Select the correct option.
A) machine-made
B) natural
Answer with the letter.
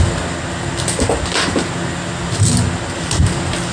B